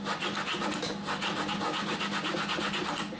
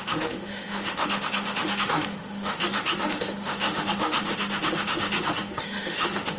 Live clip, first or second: first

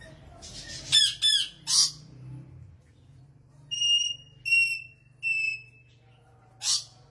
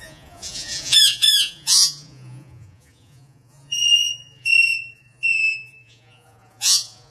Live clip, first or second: first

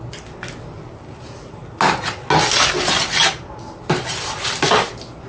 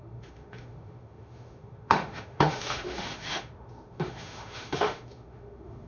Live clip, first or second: first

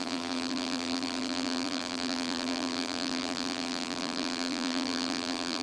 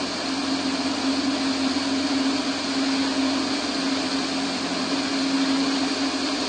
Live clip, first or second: second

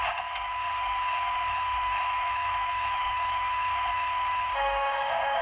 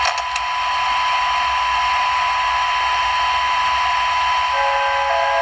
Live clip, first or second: second